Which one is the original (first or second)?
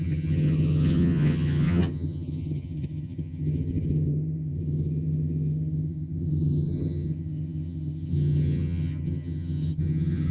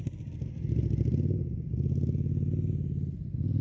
second